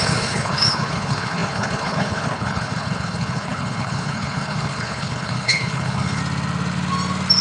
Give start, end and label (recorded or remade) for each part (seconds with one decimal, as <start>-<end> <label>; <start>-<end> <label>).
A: 0.0-6.2 remade; 6.2-7.4 recorded